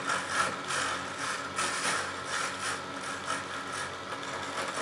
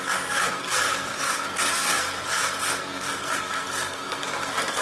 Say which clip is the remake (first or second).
second